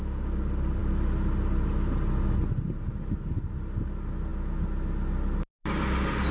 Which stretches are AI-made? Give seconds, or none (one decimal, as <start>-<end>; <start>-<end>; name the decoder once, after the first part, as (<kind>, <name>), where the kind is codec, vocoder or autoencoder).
none